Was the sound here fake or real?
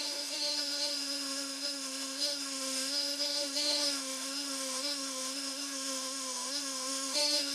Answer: fake